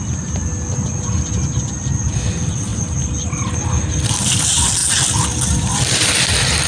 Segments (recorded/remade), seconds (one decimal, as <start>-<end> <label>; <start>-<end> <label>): 0.0-6.7 recorded